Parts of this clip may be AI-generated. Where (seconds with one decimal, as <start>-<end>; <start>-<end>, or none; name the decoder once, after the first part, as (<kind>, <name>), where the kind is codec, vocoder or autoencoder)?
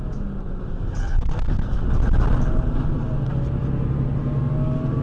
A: 1.0-1.8 (codec, SNAC)